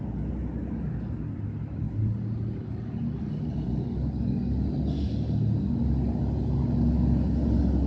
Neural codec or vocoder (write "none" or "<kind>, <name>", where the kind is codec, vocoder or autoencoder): none